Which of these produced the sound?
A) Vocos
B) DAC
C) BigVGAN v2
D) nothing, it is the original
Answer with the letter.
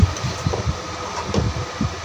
D